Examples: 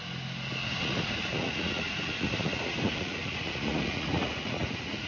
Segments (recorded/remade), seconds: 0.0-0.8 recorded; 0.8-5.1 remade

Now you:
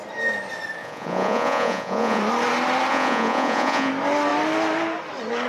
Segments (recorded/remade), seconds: 0.0-0.8 recorded; 0.8-2.2 remade; 2.2-2.9 recorded; 2.9-3.9 remade; 3.9-5.5 recorded

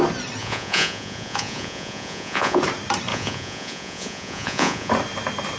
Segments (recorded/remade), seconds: 0.0-0.4 recorded; 0.4-2.6 remade; 2.6-3.1 recorded; 3.1-4.9 remade; 4.9-5.6 recorded

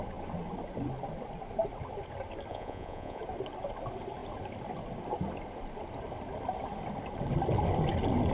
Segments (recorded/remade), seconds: 0.0-2.5 recorded; 2.5-3.2 remade; 3.2-8.3 recorded